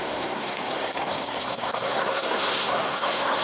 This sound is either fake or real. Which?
fake